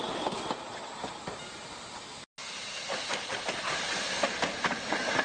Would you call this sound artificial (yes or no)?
no